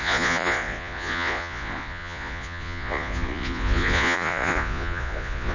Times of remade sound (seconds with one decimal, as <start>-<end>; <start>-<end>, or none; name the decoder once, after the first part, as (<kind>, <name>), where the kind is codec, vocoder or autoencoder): 0.0-5.5 (vocoder, Vocos)